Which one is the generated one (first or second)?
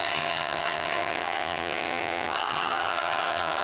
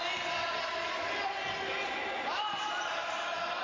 first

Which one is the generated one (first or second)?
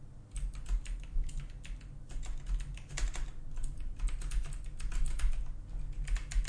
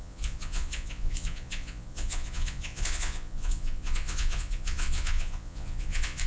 second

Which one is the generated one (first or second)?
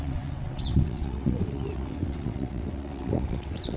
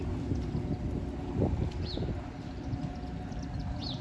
first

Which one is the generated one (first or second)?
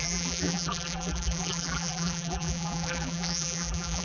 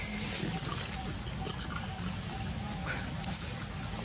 first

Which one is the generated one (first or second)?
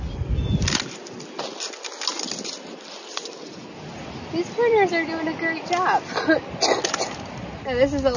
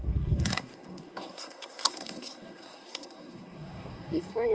second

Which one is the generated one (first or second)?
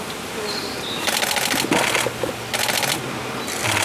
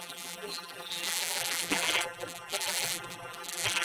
second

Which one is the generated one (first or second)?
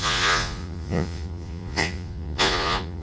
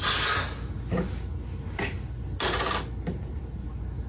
first